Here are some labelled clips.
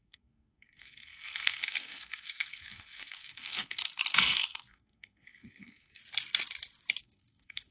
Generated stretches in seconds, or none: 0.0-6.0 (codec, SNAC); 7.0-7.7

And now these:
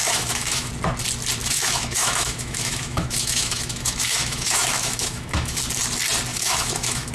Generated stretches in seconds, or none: 0.0-0.7 (autoencoder, DAC-VAE); 1.4-5.6; 6.3-7.1

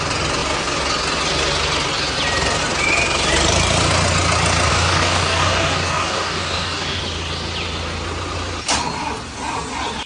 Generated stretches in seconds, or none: 4.7-7.0 (codec, DAC)

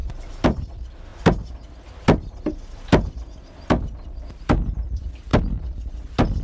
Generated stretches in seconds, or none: 0.0-1.1 (vocoder, BigVGAN v2); 3.7-6.4

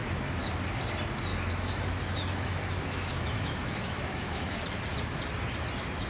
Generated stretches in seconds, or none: 1.3-4.6 (autoencoder, DAC-VAE)